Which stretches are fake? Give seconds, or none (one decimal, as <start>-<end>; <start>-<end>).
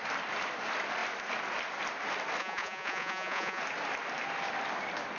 2.4-3.6